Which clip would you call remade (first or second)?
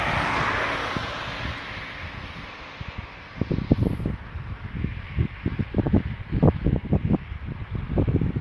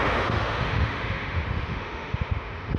second